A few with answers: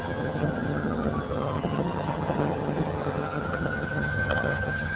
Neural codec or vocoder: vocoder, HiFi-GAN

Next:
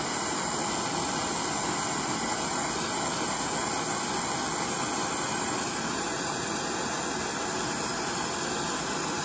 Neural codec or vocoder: none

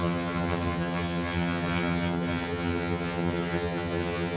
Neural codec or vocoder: vocoder, HiFi-GAN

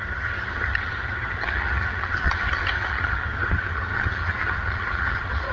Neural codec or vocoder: vocoder, HiFi-GAN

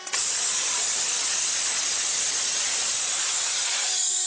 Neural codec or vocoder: none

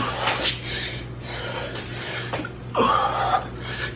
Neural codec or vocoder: none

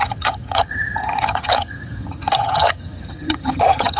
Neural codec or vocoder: vocoder, HiFi-GAN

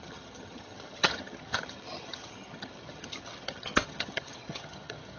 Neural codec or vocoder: vocoder, HiFi-GAN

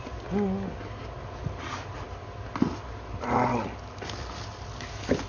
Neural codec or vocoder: none